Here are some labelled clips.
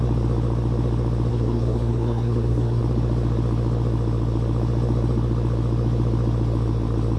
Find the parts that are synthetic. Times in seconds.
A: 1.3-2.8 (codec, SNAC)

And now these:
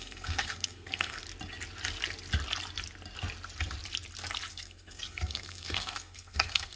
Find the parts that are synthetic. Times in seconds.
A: 0.0-1.2 (codec, SNAC); 4.5-6.8

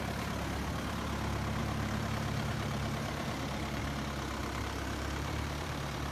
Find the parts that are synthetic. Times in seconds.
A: 1.6-3.8 (vocoder, BigVGAN v2); 4.4-6.1

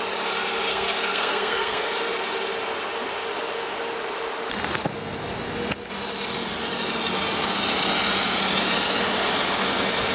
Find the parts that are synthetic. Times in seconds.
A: 0.7-1.9 (codec, SNAC)